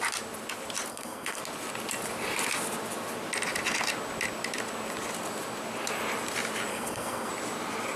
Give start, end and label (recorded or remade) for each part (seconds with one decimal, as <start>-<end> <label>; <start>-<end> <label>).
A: 0.0-0.9 recorded; 0.9-1.4 remade; 1.4-6.7 recorded; 6.7-7.3 remade; 7.3-8.0 recorded